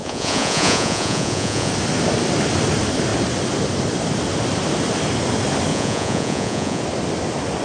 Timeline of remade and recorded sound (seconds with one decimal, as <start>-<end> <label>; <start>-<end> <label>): 0.0-1.7 remade; 1.7-5.7 recorded; 5.7-6.8 remade; 6.8-7.6 recorded